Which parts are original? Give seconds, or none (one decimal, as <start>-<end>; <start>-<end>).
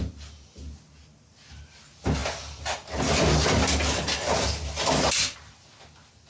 0.0-6.3